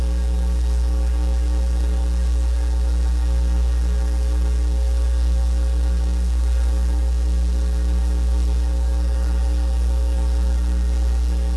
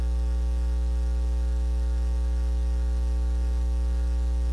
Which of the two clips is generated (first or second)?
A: first